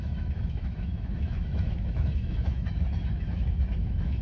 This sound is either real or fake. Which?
fake